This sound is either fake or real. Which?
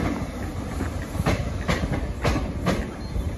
real